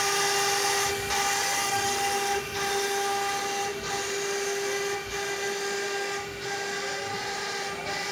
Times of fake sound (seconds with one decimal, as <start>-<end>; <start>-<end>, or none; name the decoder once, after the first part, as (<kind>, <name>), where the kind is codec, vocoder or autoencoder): none

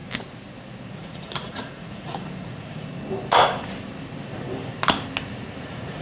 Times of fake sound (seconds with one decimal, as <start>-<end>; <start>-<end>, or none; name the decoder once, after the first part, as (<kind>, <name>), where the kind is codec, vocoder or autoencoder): 0.9-2.9 (vocoder, Vocos); 5.6-6.0

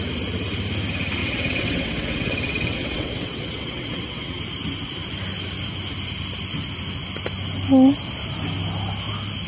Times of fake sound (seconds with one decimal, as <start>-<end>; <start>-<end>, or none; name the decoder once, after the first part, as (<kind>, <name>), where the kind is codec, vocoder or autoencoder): 1.2-4.4 (vocoder, WaveNeXt)

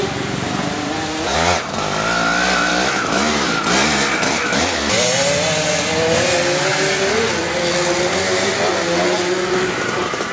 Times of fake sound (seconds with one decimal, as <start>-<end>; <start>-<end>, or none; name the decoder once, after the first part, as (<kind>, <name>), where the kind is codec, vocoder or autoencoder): none

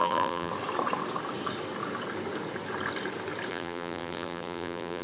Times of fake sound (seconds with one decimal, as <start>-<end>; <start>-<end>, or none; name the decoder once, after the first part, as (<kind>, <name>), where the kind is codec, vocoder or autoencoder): 0.0-0.5 (vocoder, BigVGAN v2); 3.5-5.0

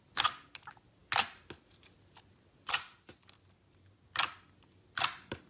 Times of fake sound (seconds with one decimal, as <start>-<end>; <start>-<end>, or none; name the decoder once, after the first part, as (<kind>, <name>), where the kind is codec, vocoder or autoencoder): none

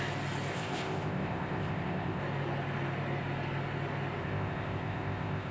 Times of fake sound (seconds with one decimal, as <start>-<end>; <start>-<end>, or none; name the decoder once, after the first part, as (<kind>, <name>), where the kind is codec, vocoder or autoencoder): 0.5-2.2 (codec, ZipCodec); 4.2-5.5

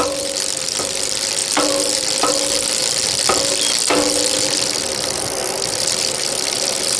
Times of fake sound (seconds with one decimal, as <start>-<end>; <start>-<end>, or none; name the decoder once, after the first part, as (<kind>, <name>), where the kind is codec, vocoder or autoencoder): none